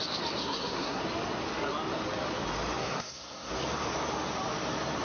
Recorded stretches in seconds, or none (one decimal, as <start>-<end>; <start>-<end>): 0.0-0.4; 1.0-2.8; 3.5-5.0